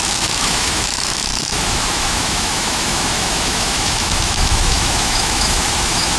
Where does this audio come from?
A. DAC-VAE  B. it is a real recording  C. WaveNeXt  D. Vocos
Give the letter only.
A